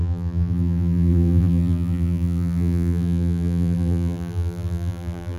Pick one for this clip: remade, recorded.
remade